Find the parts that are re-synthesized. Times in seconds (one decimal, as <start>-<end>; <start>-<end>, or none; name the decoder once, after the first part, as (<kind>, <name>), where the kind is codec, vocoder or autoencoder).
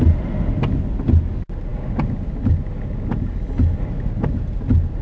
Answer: none